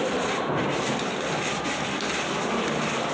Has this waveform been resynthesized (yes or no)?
no